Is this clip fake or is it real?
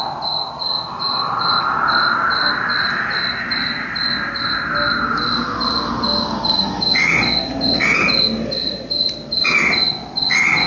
real